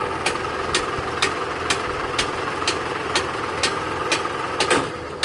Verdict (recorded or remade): recorded